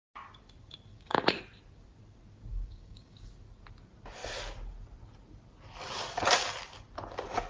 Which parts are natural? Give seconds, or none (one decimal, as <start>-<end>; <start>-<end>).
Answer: 0.0-0.9; 1.4-2.5; 3.3-7.5